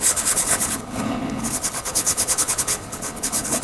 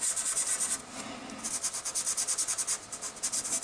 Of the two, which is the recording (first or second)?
second